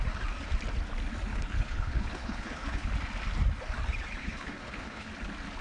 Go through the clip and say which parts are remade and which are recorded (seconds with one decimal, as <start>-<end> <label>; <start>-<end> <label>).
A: 0.0-1.3 recorded; 1.3-2.9 remade; 2.9-4.2 recorded; 4.2-5.1 remade; 5.1-5.6 recorded